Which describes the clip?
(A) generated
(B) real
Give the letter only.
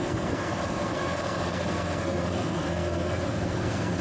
A